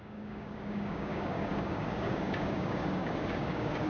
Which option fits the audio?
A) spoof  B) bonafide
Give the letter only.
A